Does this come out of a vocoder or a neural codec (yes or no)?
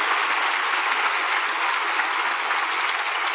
yes